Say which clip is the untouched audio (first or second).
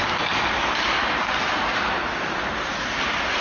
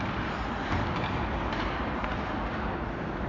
second